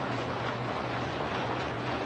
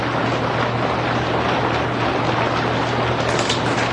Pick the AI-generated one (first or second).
first